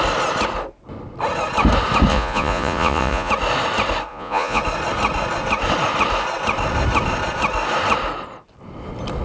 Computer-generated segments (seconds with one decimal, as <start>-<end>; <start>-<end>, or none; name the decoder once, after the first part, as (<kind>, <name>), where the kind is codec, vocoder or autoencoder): 2.1-3.3 (vocoder, Vocos); 4.1-4.6